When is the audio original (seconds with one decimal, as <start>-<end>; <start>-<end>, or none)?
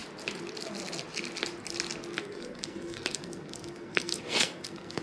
0.0-2.2